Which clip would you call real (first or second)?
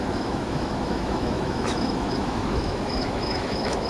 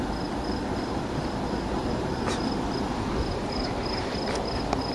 second